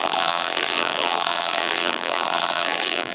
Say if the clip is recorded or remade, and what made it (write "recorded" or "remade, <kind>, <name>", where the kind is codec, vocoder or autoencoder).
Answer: remade, vocoder, BigVGAN v2